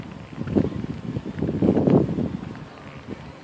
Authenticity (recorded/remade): recorded